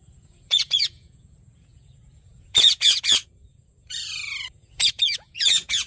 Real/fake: fake